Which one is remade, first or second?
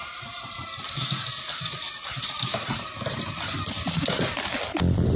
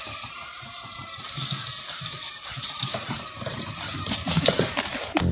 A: second